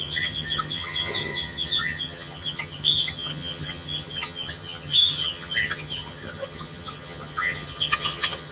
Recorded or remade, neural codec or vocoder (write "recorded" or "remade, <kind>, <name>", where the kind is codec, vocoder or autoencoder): remade, vocoder, HiFi-GAN